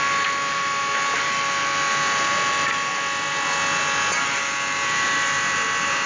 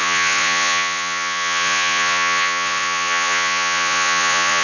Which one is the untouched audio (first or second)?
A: first